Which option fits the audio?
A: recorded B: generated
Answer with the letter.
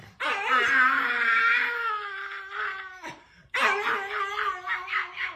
A